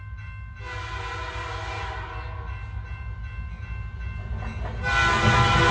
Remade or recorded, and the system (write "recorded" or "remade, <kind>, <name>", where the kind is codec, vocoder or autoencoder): recorded